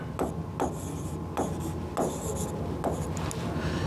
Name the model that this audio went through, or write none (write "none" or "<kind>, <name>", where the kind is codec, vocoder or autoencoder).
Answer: none